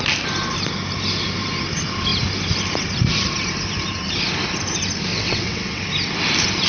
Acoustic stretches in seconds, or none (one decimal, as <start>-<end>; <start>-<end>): 0.0-5.1; 5.8-6.7